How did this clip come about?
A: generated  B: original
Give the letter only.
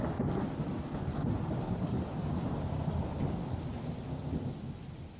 B